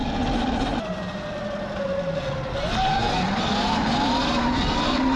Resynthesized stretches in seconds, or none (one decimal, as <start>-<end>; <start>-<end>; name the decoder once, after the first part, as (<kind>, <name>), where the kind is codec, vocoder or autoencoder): none

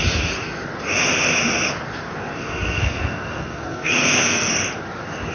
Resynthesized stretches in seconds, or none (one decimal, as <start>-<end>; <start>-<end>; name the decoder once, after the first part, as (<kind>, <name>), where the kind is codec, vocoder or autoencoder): 2.3-4.5 (codec, SNAC)

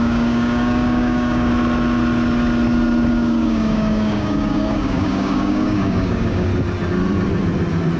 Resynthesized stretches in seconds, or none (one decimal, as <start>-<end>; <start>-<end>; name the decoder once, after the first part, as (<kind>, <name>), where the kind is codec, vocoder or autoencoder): 0.0-1.5 (codec, DAC); 3.1-6.5

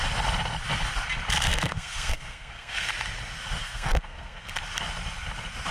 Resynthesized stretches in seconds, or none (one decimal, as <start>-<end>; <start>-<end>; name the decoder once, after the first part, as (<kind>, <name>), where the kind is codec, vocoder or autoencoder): 1.5-2.9 (codec, SNAC); 3.6-4.5

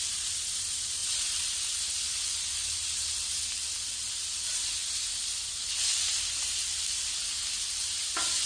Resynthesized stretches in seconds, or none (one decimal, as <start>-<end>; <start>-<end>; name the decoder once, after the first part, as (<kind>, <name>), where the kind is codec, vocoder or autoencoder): none

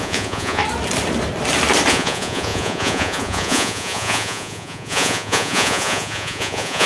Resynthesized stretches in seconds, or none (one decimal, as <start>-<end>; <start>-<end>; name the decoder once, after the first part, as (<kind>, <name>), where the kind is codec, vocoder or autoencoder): 0.0-0.6 (vocoder, Vocos); 1.9-6.9

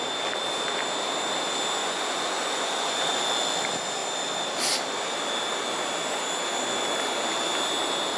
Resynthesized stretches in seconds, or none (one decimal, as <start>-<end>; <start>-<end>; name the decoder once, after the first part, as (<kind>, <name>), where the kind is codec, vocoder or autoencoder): 1.8-3.2 (vocoder, Vocos)

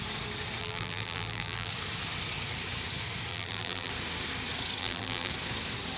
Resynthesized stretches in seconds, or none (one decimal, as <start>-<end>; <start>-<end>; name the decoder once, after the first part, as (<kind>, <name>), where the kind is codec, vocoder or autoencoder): 0.6-1.7 (vocoder, BigVGAN v2); 3.3-3.9; 4.8-5.3